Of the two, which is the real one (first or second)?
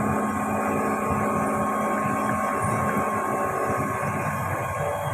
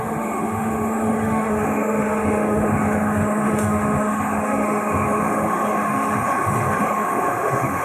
first